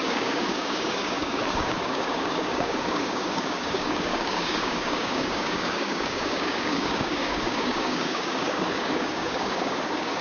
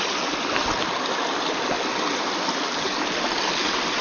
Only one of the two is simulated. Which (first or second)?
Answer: first